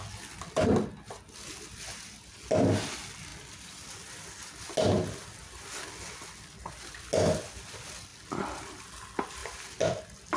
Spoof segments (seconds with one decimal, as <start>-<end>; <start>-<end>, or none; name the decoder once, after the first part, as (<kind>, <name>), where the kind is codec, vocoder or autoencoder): none